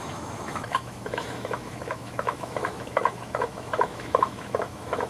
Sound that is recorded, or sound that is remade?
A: remade